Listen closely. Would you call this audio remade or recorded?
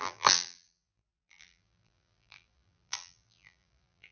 remade